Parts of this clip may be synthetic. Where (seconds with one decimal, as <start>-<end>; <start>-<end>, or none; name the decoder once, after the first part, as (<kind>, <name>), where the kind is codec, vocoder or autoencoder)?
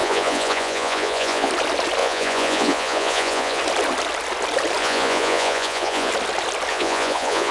0.0-1.5 (vocoder, Vocos); 2.0-3.6; 4.8-6.1; 6.7-7.5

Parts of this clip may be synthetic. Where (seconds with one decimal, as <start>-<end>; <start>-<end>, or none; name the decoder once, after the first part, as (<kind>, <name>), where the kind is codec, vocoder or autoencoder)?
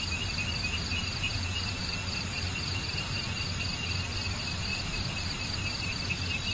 0.9-1.5 (vocoder, Vocos)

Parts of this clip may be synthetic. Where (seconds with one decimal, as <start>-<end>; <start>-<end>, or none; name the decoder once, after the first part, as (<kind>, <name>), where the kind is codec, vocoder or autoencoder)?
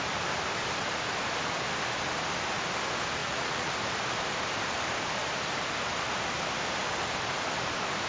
3.2-3.7 (vocoder, Vocos)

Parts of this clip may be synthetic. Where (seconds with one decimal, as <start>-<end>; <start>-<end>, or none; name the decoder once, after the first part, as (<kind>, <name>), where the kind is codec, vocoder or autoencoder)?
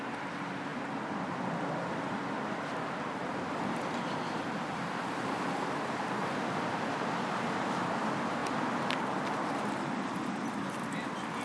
none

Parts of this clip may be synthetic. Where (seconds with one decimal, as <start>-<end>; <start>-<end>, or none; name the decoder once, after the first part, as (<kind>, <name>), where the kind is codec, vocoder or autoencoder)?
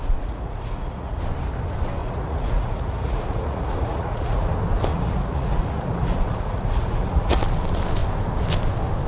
0.0-1.2 (vocoder, Vocos); 2.0-4.5; 4.9-7.4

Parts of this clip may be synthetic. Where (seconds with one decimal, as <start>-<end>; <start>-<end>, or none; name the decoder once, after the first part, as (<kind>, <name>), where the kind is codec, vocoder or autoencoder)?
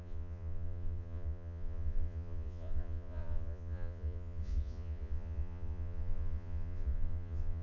0.0-7.6 (vocoder, Vocos)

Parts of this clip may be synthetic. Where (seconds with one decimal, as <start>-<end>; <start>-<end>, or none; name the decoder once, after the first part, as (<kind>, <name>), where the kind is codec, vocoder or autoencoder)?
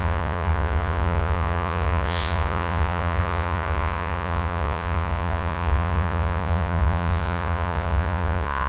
0.0-8.7 (vocoder, Vocos)